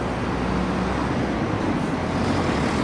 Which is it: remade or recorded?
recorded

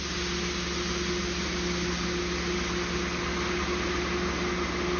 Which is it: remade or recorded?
recorded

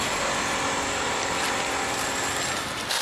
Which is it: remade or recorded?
recorded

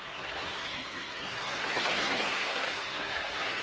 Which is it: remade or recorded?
remade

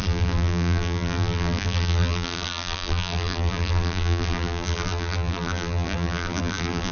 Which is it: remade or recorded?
remade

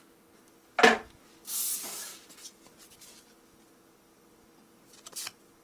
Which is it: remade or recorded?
recorded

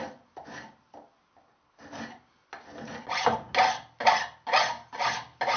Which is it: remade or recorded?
recorded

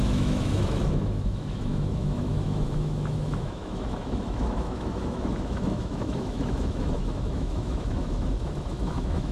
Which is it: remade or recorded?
remade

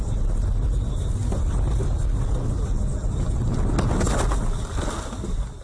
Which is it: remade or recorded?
recorded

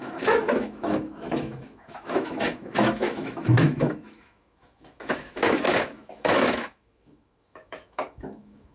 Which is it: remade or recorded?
remade